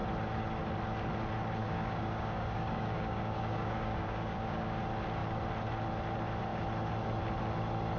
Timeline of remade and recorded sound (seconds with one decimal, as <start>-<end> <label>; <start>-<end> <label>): 0.0-1.6 recorded; 1.6-4.8 remade; 4.8-8.0 recorded